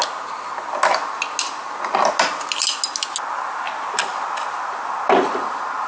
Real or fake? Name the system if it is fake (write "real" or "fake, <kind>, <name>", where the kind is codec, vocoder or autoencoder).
real